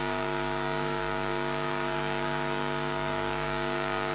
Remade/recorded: remade